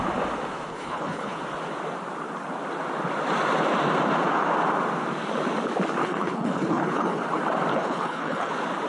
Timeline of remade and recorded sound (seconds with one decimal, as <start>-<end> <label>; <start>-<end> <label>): 0.0-0.7 recorded; 0.7-1.4 remade; 1.4-6.0 recorded; 6.0-7.2 remade; 7.2-7.7 recorded; 7.7-8.5 remade; 8.5-8.9 recorded